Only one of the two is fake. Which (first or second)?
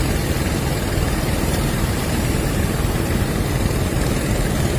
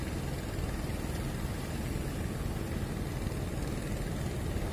first